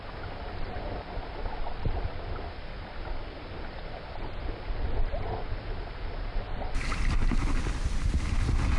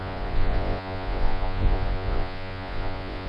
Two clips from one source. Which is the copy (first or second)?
second